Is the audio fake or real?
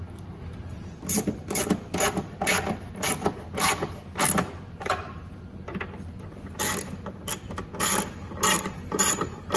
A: real